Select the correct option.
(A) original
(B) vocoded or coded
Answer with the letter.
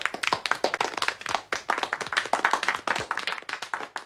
A